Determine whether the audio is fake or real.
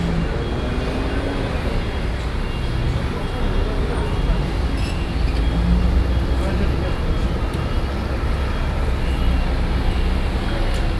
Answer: real